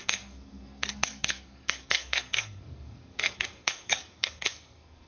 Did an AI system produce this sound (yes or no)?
yes